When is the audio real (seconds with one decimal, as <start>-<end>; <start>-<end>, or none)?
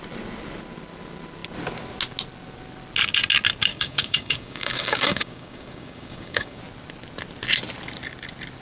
0.0-3.7; 6.6-8.6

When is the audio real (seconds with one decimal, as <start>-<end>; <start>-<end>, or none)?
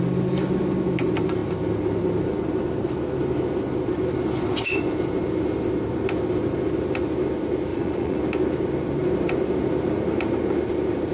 0.0-7.7; 8.2-11.1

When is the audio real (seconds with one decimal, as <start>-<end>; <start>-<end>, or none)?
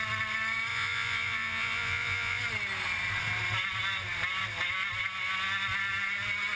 0.0-0.7; 2.4-6.5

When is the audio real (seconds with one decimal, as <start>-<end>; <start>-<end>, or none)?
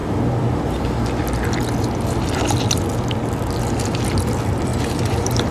0.0-4.7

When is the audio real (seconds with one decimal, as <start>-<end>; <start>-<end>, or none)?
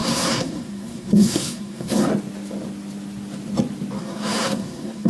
2.1-4.0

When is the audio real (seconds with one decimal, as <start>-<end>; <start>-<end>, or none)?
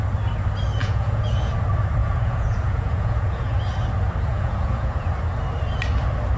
0.0-0.8; 1.5-2.0; 3.6-4.3; 5.1-6.4